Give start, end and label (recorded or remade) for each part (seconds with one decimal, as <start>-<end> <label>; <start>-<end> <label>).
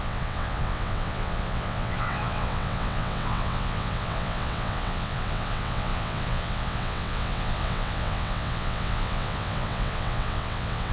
0.0-10.9 remade